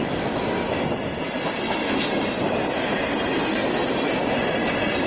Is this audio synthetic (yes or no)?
no